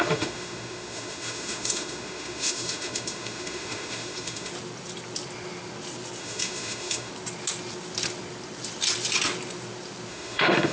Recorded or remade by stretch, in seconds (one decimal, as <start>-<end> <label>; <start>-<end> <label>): 0.0-4.5 remade; 4.5-6.2 recorded; 6.2-7.1 remade; 7.1-10.1 recorded; 10.1-10.7 remade